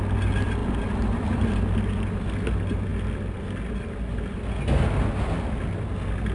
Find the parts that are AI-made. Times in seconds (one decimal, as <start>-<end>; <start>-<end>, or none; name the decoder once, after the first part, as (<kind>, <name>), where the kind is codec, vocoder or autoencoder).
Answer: 0.6-1.3 (vocoder, BigVGAN v2)